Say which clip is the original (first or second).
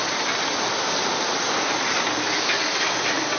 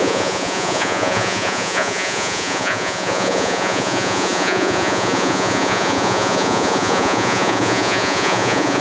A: first